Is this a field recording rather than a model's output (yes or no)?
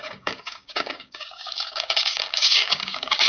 no